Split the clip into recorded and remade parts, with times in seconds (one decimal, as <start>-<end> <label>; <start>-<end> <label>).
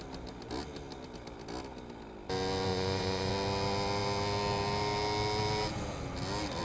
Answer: 0.0-2.7 recorded; 2.7-3.3 remade; 3.3-6.6 recorded